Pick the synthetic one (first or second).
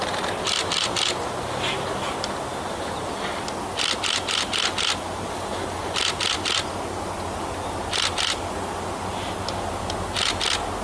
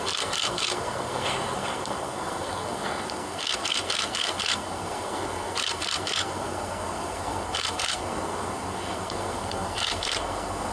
second